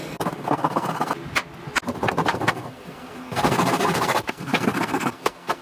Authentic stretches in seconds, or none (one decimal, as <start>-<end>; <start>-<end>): 1.1-2.3